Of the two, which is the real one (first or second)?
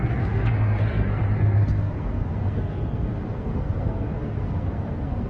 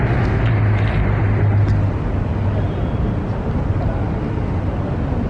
second